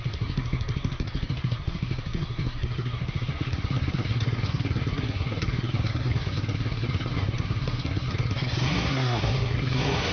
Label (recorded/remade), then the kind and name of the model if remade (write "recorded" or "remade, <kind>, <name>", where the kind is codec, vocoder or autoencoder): remade, codec, SNAC